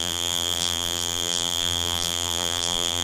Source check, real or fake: fake